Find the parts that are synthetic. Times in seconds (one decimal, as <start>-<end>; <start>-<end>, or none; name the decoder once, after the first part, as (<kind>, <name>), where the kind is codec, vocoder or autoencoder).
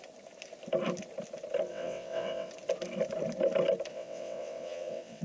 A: 1.7-2.5 (vocoder, WaveNeXt); 3.9-5.2